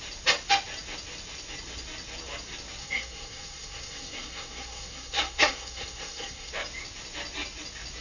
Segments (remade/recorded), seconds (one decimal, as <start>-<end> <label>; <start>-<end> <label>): 0.0-2.8 recorded; 2.8-6.5 remade; 6.5-8.0 recorded